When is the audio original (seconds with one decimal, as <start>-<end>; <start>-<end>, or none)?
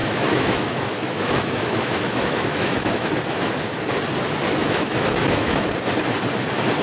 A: 3.1-4.6; 5.7-6.8